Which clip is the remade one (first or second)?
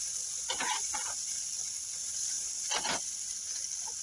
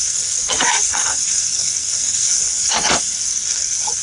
second